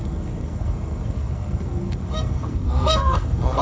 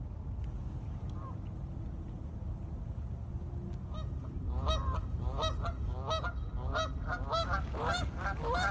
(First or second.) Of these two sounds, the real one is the second